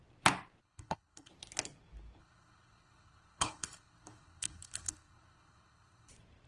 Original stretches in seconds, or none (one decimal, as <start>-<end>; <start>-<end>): 0.0-0.6; 1.3-2.2; 6.1-6.5